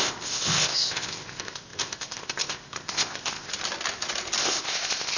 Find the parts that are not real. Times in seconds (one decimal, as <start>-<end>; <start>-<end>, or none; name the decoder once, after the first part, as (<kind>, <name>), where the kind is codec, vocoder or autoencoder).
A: 0.0-3.5 (codec, ZipCodec); 4.4-5.2